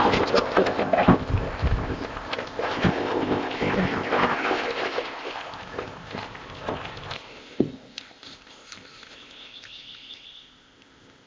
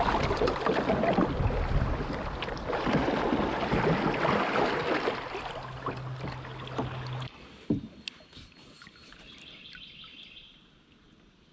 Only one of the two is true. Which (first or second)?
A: second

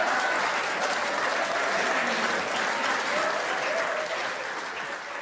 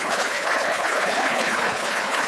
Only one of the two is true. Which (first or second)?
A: first